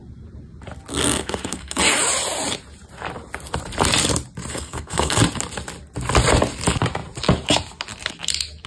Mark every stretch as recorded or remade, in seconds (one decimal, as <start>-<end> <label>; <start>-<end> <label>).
0.0-0.9 recorded; 0.9-1.8 remade; 1.8-4.5 recorded; 4.5-5.2 remade; 5.2-8.7 recorded